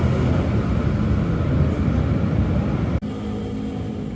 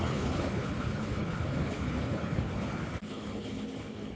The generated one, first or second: second